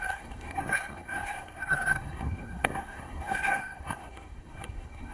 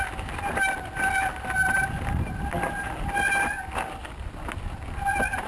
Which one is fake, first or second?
first